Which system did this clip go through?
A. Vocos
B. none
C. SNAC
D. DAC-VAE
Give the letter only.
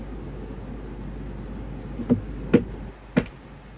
B